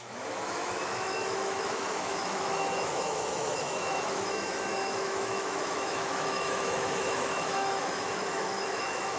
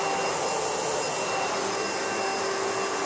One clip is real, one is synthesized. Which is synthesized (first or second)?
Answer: first